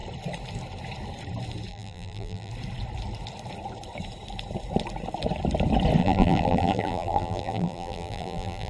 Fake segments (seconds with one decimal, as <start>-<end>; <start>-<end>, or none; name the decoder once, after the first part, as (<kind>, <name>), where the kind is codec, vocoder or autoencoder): 1.7-2.5 (vocoder, BigVGAN v2); 6.0-8.7